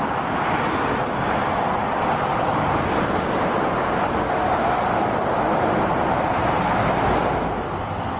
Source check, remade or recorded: recorded